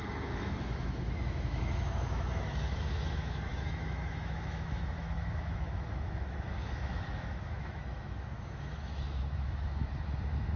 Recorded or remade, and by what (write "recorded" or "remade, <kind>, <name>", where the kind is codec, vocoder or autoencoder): remade, autoencoder, DAC-VAE